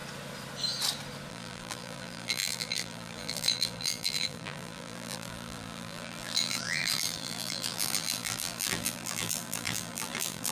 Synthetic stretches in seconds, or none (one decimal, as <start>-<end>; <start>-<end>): 1.3-10.5